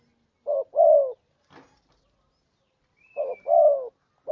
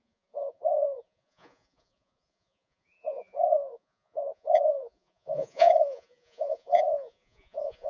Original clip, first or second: first